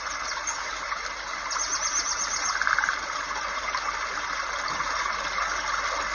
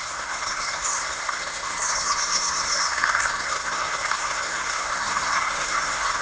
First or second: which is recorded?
first